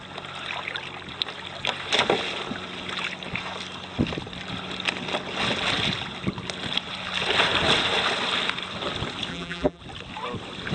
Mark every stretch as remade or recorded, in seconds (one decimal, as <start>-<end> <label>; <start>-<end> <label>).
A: 0.0-9.3 recorded; 9.3-9.8 remade; 9.8-10.7 recorded